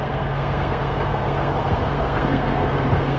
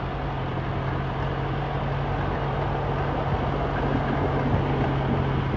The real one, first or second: second